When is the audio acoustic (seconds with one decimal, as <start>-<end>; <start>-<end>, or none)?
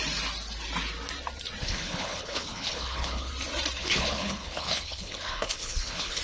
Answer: 0.0-1.6; 3.3-3.8